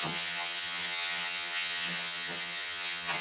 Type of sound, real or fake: fake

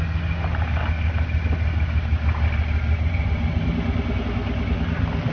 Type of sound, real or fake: real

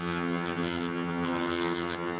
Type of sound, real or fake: fake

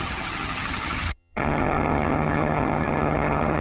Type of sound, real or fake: fake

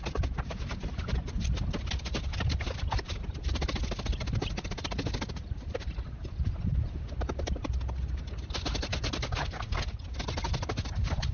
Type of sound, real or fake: real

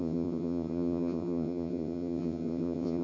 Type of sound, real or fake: fake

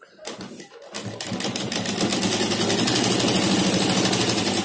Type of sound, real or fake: real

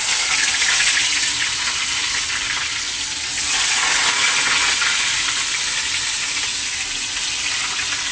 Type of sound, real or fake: real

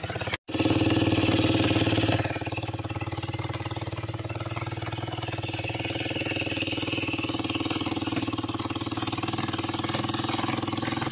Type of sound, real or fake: real